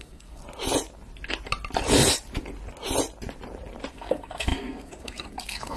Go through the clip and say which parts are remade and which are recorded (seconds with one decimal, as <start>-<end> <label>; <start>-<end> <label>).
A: 0.0-0.4 remade; 0.4-3.9 recorded; 3.9-5.8 remade